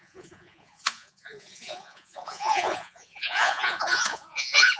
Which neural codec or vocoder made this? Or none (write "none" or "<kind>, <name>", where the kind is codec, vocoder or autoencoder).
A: vocoder, Vocos